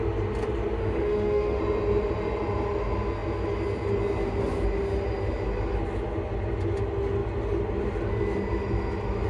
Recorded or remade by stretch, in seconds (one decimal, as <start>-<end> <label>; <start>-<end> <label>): 0.0-0.8 recorded; 0.8-1.6 remade; 1.6-9.3 recorded